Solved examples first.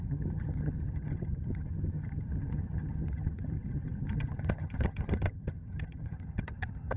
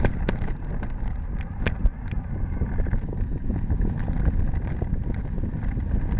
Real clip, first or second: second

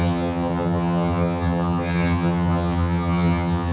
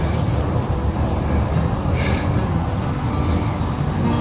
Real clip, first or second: second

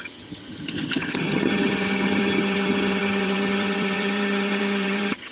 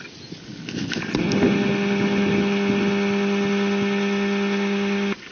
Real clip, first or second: second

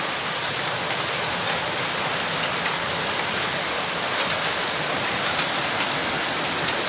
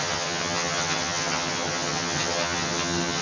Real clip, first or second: first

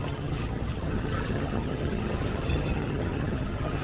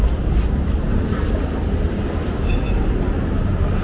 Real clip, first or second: second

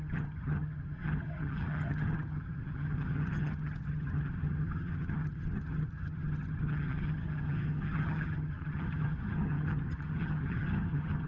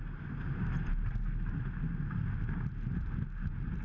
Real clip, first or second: second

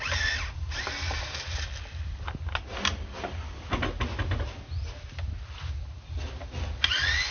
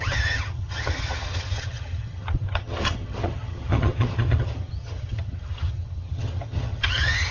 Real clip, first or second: first